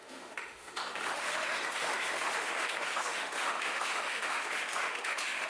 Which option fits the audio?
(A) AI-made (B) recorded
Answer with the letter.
A